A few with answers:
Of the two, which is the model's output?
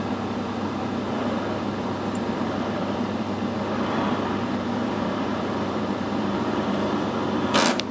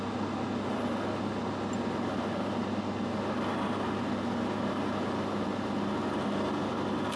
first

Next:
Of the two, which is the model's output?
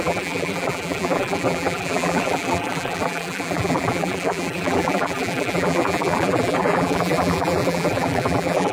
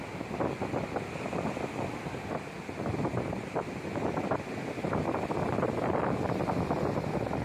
first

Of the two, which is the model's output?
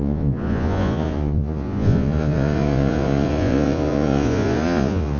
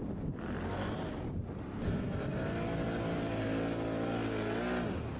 first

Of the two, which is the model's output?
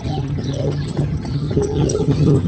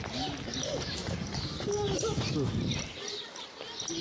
first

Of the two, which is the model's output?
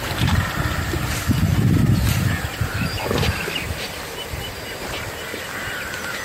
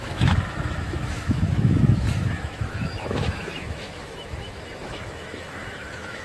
second